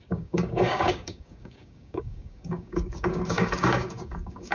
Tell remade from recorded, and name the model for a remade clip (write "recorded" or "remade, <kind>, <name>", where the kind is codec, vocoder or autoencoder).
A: remade, codec, DAC